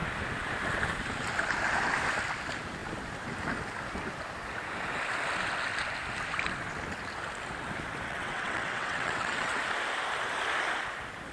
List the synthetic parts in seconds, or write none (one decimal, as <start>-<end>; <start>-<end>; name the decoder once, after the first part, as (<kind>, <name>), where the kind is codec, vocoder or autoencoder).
8.1-9.6 (vocoder, WaveNeXt)